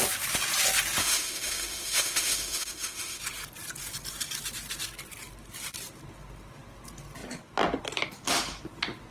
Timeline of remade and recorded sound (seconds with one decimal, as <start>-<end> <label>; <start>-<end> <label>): 0.0-1.0 recorded; 1.0-3.2 remade; 3.2-9.1 recorded